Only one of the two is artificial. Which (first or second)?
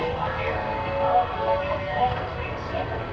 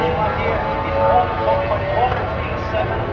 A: first